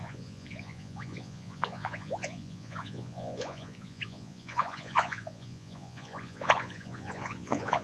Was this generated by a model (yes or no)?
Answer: yes